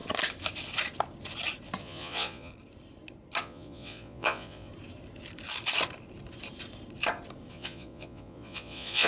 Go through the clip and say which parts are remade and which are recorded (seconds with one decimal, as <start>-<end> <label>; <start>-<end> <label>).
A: 0.0-1.8 recorded; 1.8-2.5 remade; 2.5-3.4 recorded; 3.4-4.7 remade; 4.7-7.5 recorded; 7.5-9.1 remade